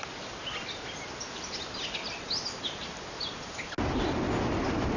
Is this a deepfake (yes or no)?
no